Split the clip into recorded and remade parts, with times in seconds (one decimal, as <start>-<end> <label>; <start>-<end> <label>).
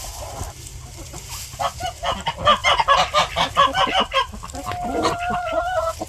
0.0-6.1 recorded